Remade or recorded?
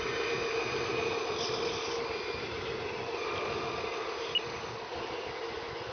recorded